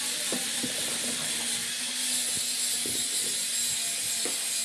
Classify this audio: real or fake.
real